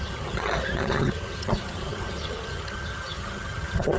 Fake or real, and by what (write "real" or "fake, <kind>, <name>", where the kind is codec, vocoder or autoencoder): fake, vocoder, HiFi-GAN